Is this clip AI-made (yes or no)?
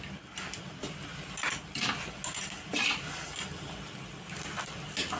no